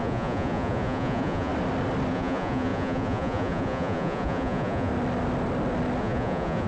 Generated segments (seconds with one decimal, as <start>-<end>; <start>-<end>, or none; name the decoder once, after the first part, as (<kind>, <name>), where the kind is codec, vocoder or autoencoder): 0.0-1.5 (vocoder, Vocos); 2.1-4.9; 6.0-6.7